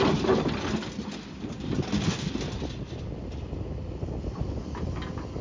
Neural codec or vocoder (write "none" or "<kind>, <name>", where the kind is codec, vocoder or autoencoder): none